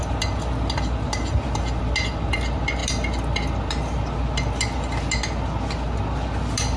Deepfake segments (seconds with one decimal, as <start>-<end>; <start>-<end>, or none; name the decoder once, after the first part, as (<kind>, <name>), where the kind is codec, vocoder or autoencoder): none